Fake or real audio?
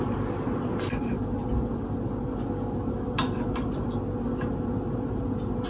real